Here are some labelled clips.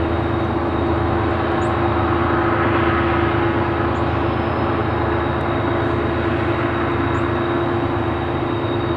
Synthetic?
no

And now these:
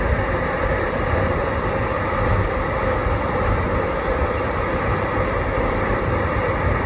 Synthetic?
no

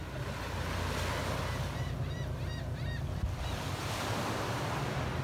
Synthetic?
no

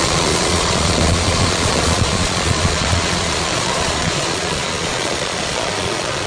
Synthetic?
yes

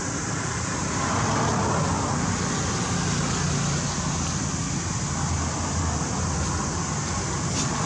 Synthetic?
no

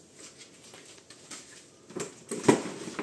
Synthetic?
no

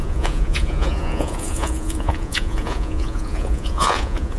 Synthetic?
yes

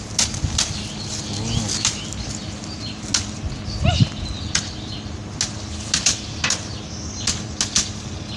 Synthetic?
no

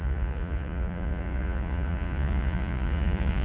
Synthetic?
yes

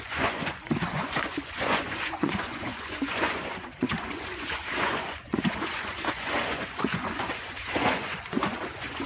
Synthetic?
yes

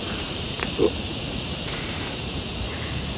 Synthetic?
yes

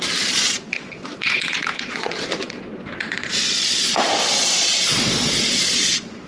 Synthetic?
yes